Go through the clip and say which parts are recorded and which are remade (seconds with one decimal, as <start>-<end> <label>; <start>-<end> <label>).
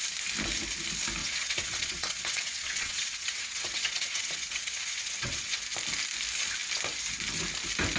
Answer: 0.0-1.2 recorded; 1.2-5.6 remade; 5.6-8.0 recorded